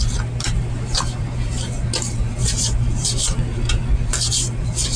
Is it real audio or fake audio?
fake